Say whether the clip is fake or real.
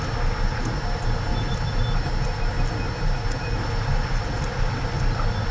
real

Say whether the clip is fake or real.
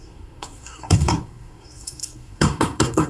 fake